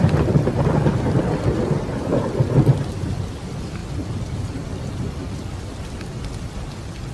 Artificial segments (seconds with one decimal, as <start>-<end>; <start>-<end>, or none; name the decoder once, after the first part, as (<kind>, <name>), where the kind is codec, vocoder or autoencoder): none